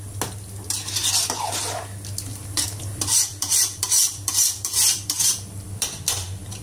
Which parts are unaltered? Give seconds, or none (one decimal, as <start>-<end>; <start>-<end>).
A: 0.0-2.3